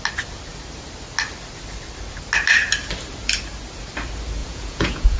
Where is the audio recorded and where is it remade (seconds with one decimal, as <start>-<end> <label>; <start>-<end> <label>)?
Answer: 0.0-4.4 recorded; 4.4-5.2 remade